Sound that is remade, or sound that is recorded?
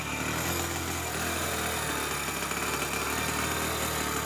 recorded